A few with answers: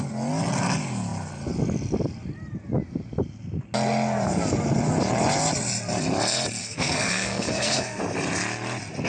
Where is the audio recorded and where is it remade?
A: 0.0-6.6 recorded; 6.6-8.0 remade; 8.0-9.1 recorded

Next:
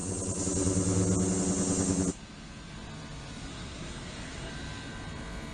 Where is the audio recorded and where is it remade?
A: 0.0-3.5 recorded; 3.5-4.5 remade; 4.5-5.5 recorded

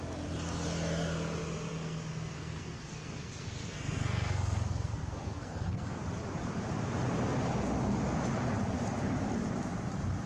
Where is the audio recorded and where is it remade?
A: 0.0-1.7 recorded; 1.7-6.0 remade; 6.0-10.3 recorded

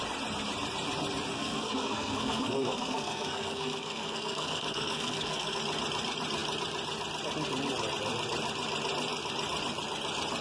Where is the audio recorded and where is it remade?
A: 0.0-1.3 recorded; 1.3-5.6 remade; 5.6-10.4 recorded

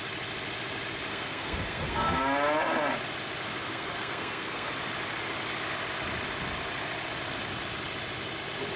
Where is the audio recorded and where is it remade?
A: 0.0-1.1 recorded; 1.1-2.2 remade; 2.2-3.6 recorded; 3.6-4.7 remade; 4.7-8.8 recorded